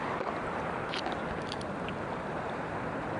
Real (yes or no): yes